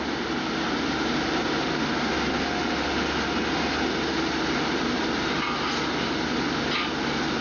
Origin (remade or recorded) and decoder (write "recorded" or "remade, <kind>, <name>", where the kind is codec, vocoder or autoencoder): recorded